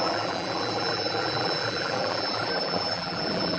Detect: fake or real fake